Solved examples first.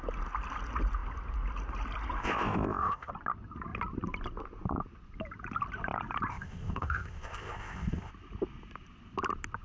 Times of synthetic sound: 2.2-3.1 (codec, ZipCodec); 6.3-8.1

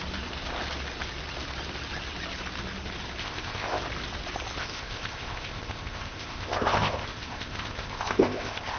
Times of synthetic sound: 3.2-3.8 (codec, ZipCodec); 4.6-8.8

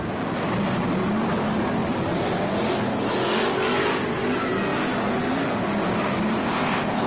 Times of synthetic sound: 6.4-7.1 (codec, ZipCodec)

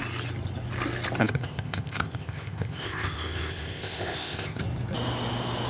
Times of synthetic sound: 1.2-4.6 (codec, ZipCodec)